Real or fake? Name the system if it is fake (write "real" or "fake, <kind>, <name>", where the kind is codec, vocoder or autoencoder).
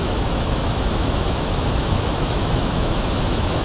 fake, autoencoder, DAC-VAE